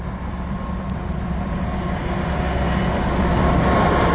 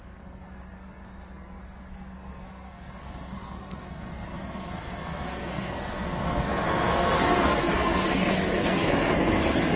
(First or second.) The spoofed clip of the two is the second